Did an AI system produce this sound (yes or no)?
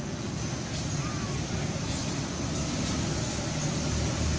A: no